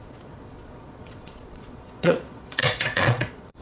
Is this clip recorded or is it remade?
remade